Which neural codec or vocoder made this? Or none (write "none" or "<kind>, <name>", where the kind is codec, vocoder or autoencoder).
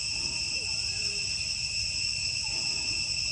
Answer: vocoder, BigVGAN v2